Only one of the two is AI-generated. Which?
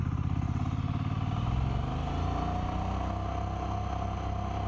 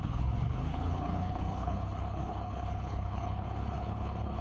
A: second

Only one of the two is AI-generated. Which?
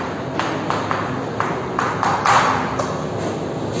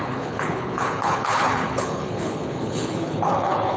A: second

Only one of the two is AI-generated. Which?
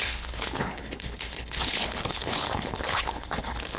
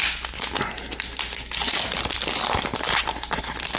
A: first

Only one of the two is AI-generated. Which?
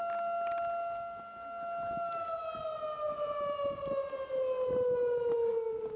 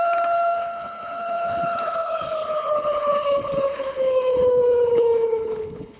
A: second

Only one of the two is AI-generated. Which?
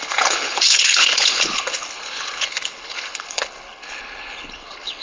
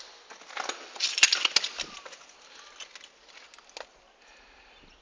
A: first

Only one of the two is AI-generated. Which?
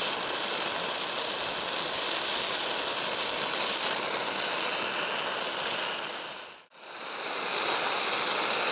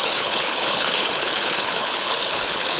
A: second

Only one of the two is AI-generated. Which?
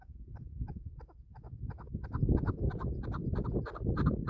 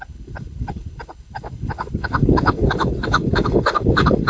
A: second